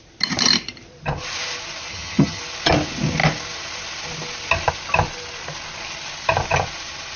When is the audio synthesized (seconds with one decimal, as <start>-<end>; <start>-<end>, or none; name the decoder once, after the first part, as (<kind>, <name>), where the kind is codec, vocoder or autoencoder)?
1.9-2.4 (vocoder, HiFi-GAN)